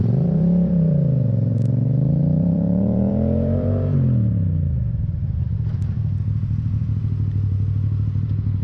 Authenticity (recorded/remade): remade